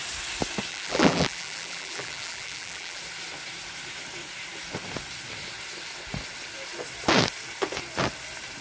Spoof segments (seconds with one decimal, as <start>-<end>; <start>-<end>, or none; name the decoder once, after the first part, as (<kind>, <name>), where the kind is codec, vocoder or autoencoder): 0.7-3.0 (vocoder, BigVGAN v2)